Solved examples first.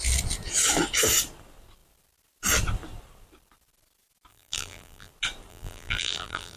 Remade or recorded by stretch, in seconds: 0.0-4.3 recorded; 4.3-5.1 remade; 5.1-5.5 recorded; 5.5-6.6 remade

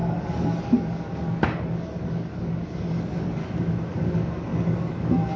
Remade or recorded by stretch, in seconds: 0.0-3.4 remade; 3.4-3.9 recorded; 3.9-5.4 remade

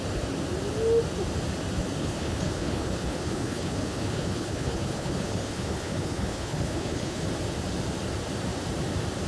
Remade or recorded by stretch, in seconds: 0.0-2.0 recorded; 2.0-7.2 remade; 7.2-9.3 recorded

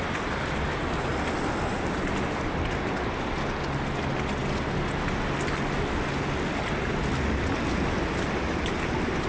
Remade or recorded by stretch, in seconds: 0.0-1.1 recorded; 1.1-2.1 remade; 2.1-9.3 recorded

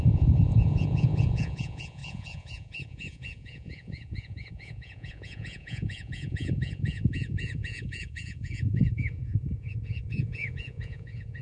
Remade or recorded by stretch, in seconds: 0.0-11.4 remade